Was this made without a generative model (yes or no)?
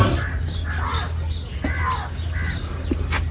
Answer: yes